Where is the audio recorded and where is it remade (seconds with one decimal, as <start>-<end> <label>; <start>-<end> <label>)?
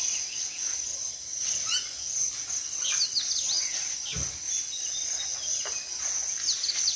0.0-7.0 recorded